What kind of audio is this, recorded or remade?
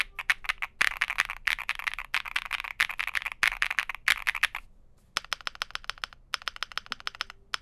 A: recorded